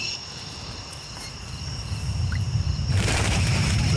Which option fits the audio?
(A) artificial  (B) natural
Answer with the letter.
A